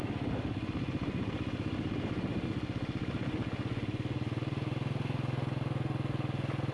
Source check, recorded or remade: recorded